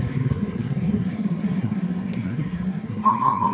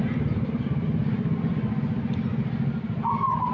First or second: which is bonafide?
second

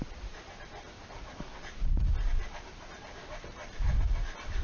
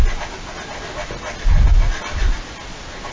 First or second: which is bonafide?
second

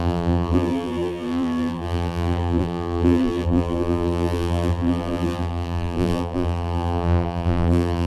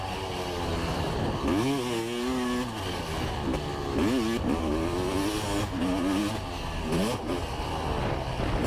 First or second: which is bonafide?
second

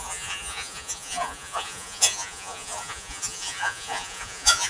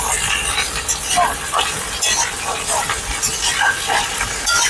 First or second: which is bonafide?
second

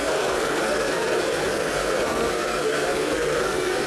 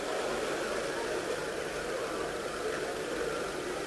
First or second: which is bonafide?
second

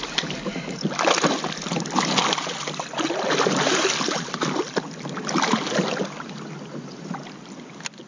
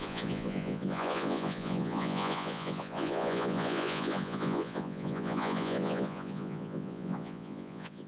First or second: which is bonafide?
first